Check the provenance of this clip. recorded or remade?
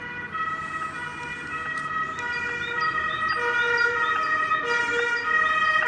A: recorded